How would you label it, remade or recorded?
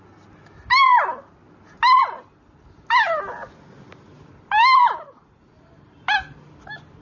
recorded